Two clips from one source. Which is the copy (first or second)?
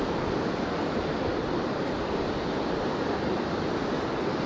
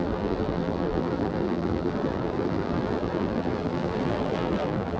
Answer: second